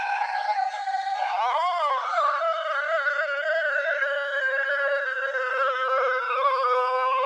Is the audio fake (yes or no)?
yes